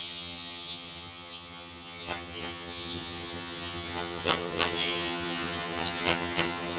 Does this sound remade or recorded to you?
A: remade